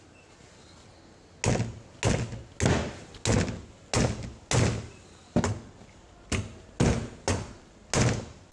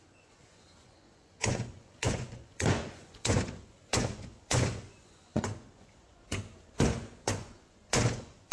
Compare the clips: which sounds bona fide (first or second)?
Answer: first